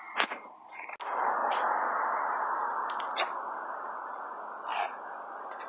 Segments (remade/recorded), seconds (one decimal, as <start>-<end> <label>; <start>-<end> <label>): 0.0-5.7 recorded